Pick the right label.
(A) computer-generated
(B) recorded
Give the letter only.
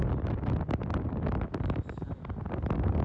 B